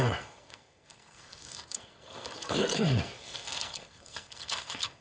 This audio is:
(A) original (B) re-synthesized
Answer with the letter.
B